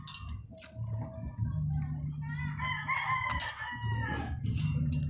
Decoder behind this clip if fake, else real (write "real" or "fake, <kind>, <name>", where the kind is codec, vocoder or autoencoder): real